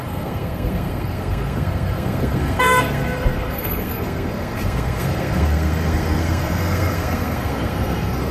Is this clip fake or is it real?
fake